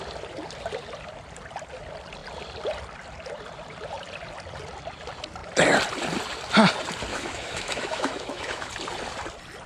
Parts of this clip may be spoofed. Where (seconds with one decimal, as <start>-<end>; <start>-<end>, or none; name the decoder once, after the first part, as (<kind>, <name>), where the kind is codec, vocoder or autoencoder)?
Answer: 7.1-8.7 (autoencoder, DAC-VAE)